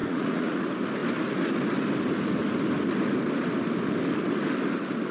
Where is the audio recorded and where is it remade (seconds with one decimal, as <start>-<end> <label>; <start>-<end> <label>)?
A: 0.0-0.6 remade; 0.6-5.1 recorded